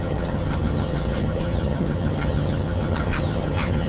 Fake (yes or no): yes